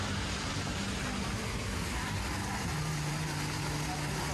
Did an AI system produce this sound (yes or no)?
no